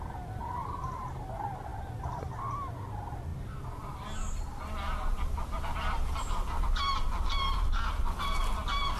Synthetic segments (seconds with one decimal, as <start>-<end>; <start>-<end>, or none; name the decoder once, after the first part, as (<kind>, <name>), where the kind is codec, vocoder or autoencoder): none